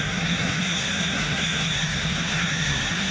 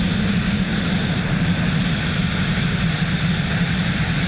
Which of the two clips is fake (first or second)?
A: first